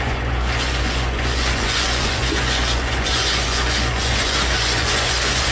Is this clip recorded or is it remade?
remade